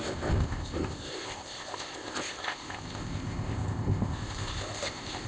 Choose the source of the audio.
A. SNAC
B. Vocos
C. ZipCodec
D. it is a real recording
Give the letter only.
C